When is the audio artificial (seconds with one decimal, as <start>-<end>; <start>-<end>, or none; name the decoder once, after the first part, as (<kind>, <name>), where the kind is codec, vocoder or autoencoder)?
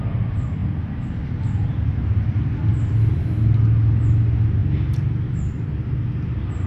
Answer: none